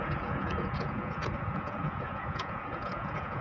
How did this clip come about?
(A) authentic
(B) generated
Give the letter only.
B